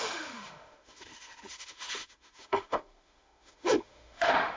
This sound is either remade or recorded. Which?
remade